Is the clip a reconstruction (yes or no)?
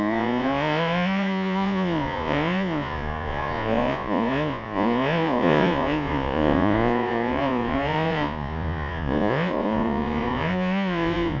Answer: yes